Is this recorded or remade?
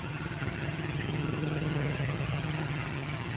remade